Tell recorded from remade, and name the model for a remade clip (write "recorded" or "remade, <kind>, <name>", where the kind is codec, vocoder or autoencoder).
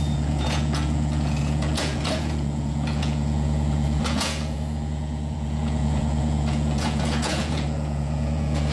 remade, vocoder, Vocos